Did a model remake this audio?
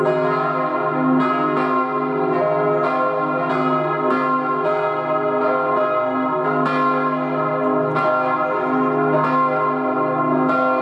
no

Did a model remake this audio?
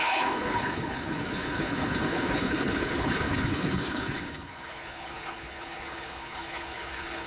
yes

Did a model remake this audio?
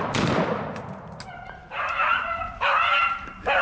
no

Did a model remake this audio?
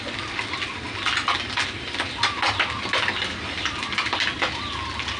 no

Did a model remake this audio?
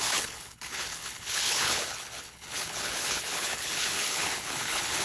yes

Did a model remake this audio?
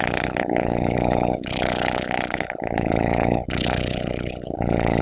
yes